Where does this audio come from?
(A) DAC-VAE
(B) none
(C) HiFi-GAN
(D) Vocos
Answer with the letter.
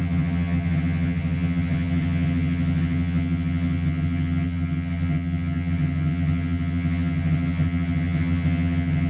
C